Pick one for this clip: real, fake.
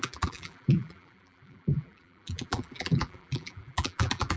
fake